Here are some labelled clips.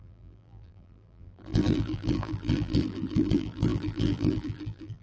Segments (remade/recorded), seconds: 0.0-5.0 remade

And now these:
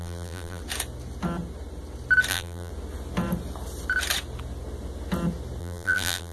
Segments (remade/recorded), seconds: 0.0-0.6 remade; 0.6-2.3 recorded; 2.3-2.7 remade; 2.7-5.6 recorded; 5.6-6.3 remade